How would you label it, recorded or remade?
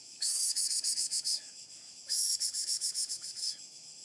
remade